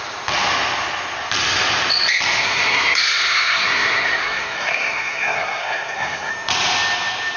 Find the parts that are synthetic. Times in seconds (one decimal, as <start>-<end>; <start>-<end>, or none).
2.4-6.3